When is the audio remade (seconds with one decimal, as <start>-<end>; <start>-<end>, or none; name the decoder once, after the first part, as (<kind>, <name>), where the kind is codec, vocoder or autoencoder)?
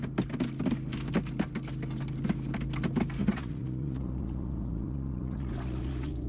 3.2-6.3 (vocoder, Vocos)